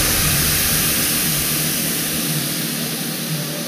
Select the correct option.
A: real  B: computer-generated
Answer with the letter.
A